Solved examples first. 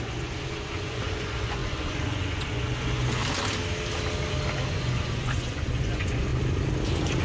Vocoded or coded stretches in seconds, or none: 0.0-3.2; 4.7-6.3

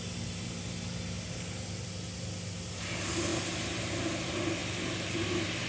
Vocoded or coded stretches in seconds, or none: none

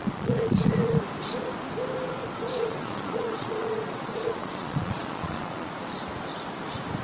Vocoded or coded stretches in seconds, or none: 0.0-1.0; 2.6-5.7

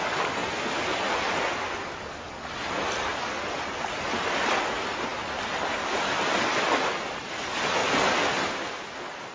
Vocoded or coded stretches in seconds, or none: none

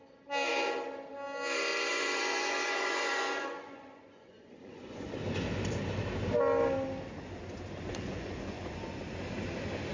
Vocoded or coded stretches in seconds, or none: 1.9-5.1; 7.9-9.0